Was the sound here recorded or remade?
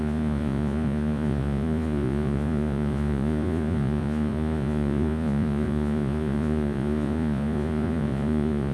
remade